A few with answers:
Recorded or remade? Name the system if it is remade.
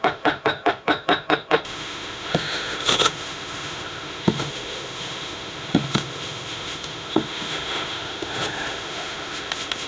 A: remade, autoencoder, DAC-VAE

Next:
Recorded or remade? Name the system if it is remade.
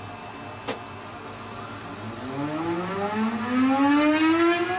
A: recorded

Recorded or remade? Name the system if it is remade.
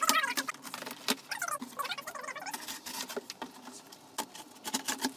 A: recorded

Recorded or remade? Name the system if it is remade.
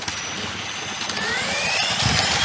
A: recorded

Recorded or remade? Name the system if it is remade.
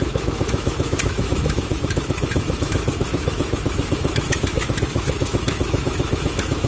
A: remade, autoencoder, DAC-VAE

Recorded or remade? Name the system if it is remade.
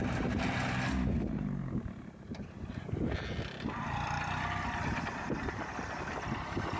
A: recorded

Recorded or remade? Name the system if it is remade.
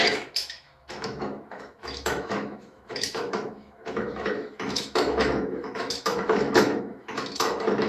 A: remade, autoencoder, DAC-VAE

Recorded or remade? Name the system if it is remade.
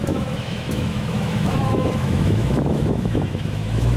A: remade, autoencoder, DAC-VAE